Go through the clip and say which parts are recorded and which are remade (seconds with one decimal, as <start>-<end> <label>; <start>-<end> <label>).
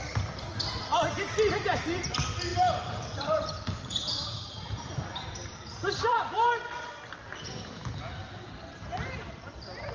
0.0-2.5 recorded; 2.5-7.1 remade; 7.1-8.2 recorded; 8.2-9.2 remade; 9.2-9.9 recorded